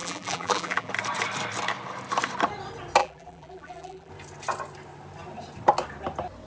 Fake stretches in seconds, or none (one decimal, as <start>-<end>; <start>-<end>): 0.0-0.9; 3.0-4.1